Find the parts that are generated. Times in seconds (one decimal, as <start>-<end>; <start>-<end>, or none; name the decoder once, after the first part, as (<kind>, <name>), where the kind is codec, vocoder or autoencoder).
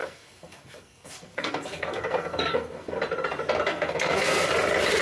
0.0-3.0 (codec, SNAC); 3.7-4.5